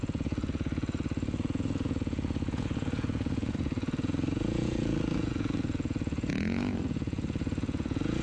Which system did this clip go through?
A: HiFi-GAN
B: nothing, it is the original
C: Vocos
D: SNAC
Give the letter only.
C